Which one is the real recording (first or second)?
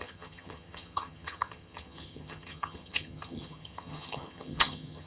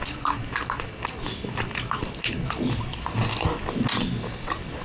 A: second